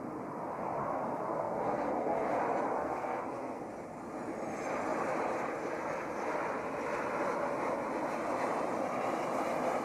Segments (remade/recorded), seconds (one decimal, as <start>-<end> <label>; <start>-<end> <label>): 0.0-0.8 recorded; 0.8-2.4 remade; 2.4-2.8 recorded; 2.8-3.6 remade; 3.6-9.8 recorded

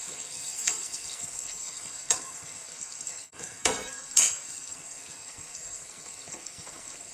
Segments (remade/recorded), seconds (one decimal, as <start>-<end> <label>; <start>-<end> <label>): 0.0-7.1 remade

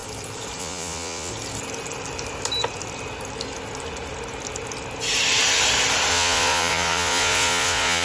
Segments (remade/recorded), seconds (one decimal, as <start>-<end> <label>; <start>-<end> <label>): 0.0-0.6 recorded; 0.6-1.3 remade; 1.3-6.1 recorded; 6.1-8.0 remade

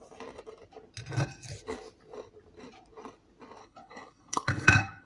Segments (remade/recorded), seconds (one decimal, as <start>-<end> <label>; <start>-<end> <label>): 0.0-3.6 recorded; 3.6-5.1 remade

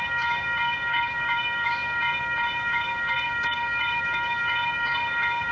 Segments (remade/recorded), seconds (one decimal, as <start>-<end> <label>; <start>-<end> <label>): 0.0-5.5 remade

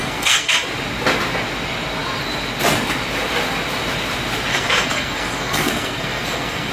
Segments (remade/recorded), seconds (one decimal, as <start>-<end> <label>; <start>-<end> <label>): 0.0-0.6 remade; 0.6-4.5 recorded; 4.5-6.7 remade